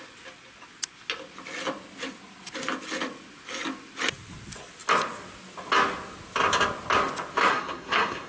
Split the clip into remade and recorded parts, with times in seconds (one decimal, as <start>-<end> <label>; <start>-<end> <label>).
0.0-7.5 recorded; 7.5-8.3 remade